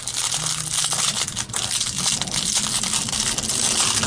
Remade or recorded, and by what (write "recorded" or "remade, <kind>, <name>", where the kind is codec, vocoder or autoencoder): recorded